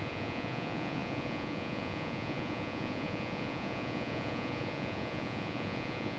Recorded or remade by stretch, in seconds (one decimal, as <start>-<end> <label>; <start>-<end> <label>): 0.0-6.2 remade